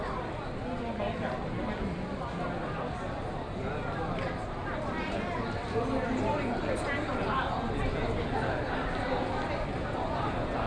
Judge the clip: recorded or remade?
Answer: recorded